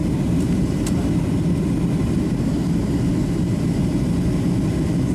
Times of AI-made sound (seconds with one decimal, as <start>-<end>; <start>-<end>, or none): none